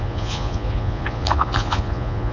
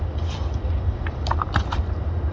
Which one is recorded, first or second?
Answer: second